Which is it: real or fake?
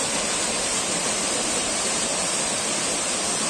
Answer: real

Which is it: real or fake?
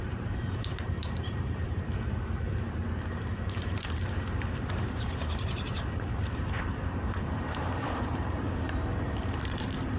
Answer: fake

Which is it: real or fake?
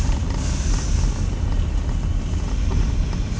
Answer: real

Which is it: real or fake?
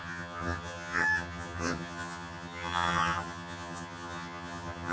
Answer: fake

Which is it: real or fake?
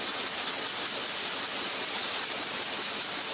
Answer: real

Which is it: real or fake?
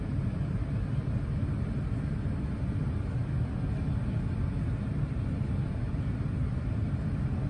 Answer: real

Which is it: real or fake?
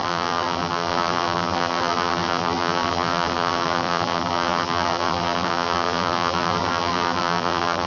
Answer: fake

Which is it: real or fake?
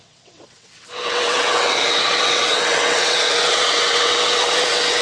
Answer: fake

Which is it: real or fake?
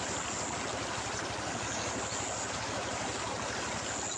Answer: real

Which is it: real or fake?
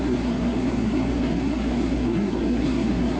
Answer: fake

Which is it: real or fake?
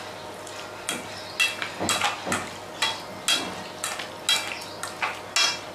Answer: real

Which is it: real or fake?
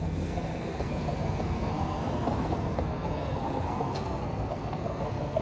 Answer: fake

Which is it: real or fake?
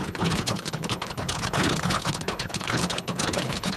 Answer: fake